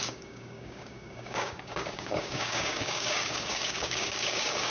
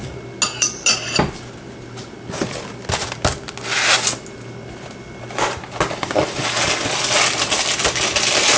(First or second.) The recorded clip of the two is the second